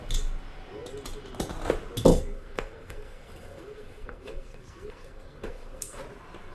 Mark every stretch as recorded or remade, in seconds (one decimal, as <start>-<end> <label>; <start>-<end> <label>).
0.0-2.1 recorded; 2.1-6.0 remade; 6.0-6.5 recorded